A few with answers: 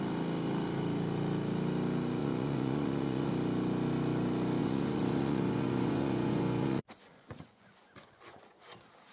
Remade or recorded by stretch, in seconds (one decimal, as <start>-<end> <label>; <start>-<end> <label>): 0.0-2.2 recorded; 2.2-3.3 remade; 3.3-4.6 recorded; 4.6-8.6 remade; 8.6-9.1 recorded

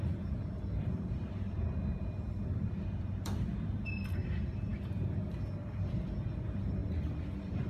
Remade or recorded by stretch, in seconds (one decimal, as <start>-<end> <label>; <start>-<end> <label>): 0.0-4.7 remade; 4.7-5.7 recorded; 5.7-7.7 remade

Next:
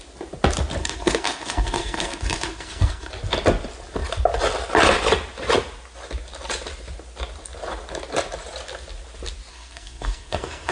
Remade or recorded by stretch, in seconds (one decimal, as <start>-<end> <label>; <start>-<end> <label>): 0.0-0.8 recorded; 0.8-3.1 remade; 3.1-9.5 recorded; 9.5-10.7 remade